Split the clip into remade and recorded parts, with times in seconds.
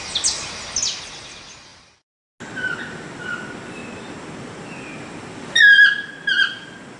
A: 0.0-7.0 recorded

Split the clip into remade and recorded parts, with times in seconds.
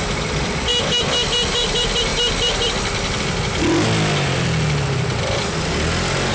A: 0.0-0.7 remade; 0.7-1.5 recorded; 1.5-2.1 remade; 2.1-6.3 recorded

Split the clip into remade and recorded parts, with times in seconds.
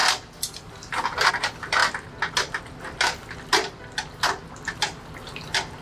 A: 0.0-1.3 recorded; 1.3-1.8 remade; 1.8-5.2 recorded; 5.2-5.8 remade